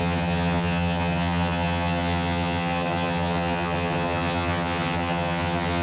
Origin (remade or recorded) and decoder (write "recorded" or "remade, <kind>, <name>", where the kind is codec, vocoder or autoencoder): remade, vocoder, HiFi-GAN